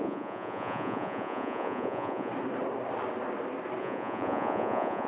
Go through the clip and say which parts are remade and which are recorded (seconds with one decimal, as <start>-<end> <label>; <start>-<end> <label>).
0.0-2.3 remade; 2.3-3.8 recorded; 3.8-5.1 remade